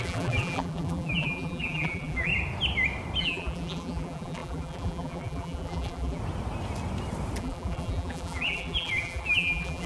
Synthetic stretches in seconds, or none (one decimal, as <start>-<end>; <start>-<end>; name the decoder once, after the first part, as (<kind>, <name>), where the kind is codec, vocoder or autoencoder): 0.0-2.3 (vocoder, BigVGAN v2); 3.2-6.2; 7.4-9.9